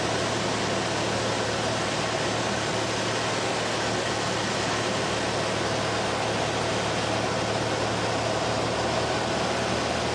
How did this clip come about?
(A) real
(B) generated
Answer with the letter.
A